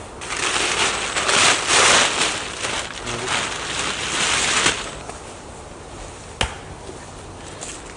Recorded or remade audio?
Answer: recorded